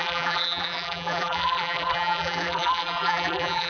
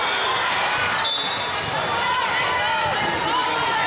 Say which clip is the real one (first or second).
second